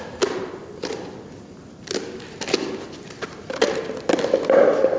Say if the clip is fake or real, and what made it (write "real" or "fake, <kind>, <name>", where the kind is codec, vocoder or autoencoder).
real